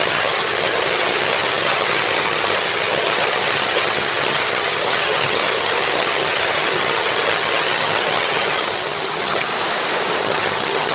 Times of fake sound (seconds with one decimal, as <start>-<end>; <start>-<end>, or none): 0.0-9.5; 10.2-10.9